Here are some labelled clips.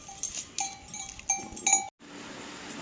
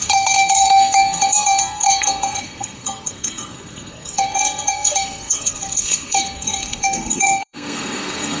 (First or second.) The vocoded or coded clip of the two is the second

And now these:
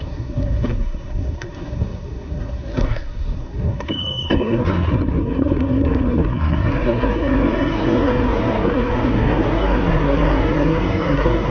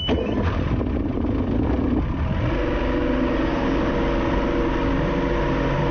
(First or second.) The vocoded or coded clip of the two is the first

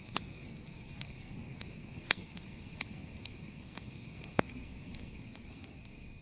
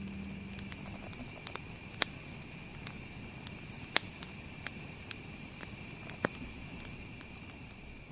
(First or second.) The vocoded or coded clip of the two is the first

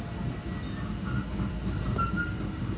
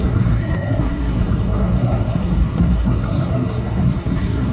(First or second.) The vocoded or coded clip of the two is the second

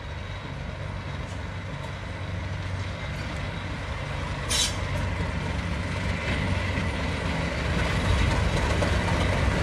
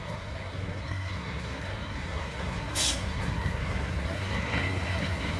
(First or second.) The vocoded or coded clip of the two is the second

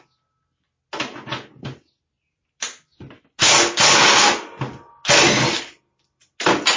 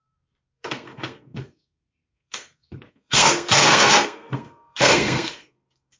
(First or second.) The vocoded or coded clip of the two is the second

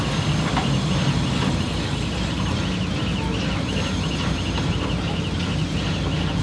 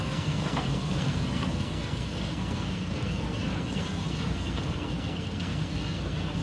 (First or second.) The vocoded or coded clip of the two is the second